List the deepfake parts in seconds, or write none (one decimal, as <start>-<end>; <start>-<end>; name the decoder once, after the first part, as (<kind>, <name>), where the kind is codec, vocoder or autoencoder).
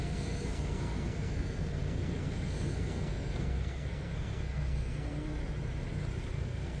0.0-5.4 (codec, SNAC); 6.3-6.8